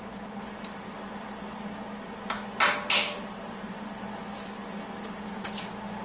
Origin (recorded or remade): recorded